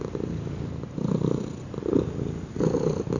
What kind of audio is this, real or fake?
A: real